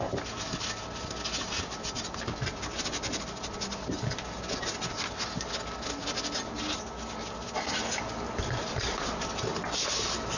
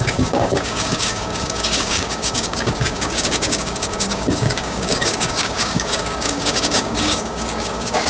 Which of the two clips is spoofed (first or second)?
second